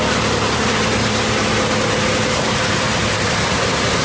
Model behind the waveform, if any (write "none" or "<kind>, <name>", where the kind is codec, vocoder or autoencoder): none